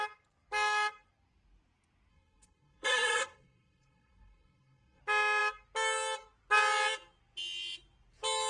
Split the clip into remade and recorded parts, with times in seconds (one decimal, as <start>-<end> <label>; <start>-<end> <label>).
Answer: 0.0-2.1 recorded; 2.1-5.0 remade; 5.0-8.5 recorded